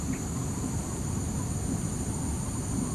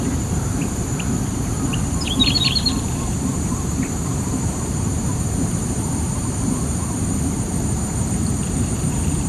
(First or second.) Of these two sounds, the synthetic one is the second